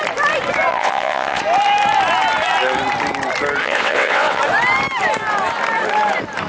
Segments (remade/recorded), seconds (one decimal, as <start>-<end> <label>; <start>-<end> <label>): 0.0-0.7 recorded; 0.7-1.4 remade; 1.4-3.6 recorded; 3.6-4.4 remade; 4.4-6.5 recorded